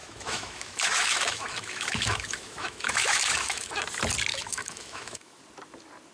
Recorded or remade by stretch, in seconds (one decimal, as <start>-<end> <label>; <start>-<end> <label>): 0.0-3.7 remade; 3.7-4.3 recorded; 4.3-5.4 remade; 5.4-6.1 recorded